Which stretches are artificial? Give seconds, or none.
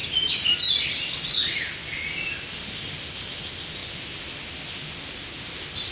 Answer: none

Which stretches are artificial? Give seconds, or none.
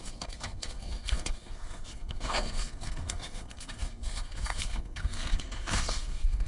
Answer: 0.0-6.5 (codec, SNAC)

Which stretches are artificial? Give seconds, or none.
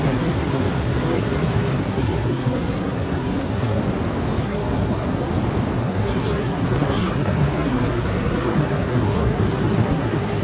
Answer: 0.0-3.8 (codec, SNAC); 4.4-5.3; 5.8-10.4